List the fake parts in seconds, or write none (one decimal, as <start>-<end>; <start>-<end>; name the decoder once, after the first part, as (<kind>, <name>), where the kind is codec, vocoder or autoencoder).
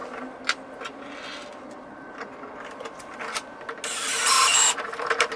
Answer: none